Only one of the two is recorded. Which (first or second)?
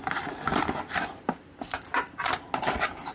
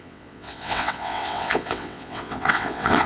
first